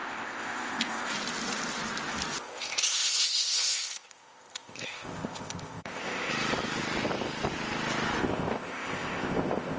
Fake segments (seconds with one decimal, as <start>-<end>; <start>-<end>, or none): 0.0-1.1; 2.4-6.3; 8.2-9.8